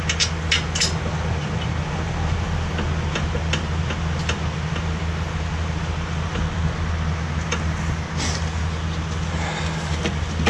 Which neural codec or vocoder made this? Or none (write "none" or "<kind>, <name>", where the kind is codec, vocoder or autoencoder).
none